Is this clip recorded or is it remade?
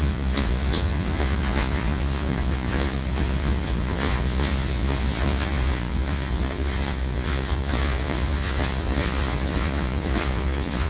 remade